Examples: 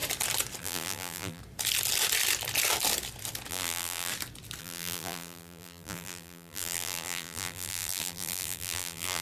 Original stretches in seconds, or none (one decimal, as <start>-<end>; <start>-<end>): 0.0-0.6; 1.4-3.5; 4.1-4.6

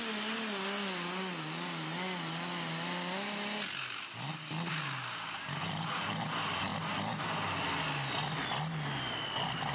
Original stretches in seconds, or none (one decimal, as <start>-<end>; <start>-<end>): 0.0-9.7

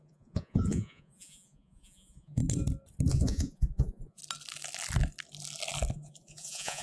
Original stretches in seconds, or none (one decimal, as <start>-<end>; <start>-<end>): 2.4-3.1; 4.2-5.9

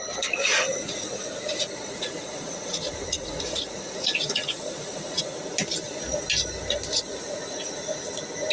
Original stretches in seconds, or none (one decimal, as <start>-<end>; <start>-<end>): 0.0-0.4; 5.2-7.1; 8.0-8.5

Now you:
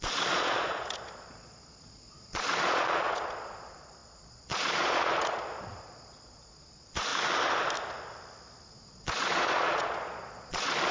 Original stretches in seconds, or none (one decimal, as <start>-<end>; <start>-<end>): 7.1-8.7